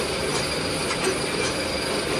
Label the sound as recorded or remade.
recorded